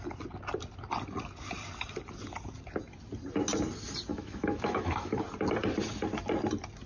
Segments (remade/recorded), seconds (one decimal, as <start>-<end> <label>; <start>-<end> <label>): 0.0-4.1 recorded; 4.1-5.2 remade; 5.2-6.9 recorded